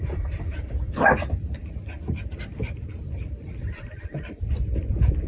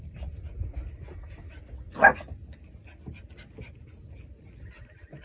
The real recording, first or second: second